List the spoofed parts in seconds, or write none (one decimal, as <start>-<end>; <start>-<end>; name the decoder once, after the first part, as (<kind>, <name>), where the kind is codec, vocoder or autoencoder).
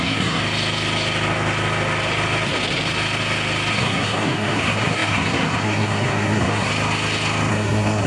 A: 0.0-0.4 (codec, SNAC); 3.7-6.7; 7.5-8.1